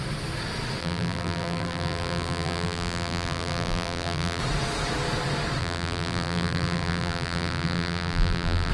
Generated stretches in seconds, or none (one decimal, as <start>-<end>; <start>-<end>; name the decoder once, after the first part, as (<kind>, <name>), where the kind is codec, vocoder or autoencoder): 0.8-4.4 (vocoder, BigVGAN v2); 5.6-8.7